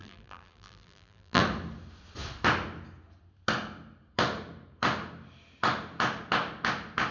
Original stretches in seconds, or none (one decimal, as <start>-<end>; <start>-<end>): 1.4-7.1